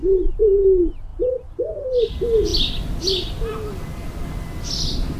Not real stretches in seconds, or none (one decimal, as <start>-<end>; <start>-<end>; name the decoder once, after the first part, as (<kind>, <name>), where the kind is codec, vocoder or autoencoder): none